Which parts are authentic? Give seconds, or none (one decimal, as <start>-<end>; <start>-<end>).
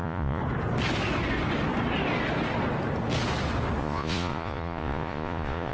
0.4-3.8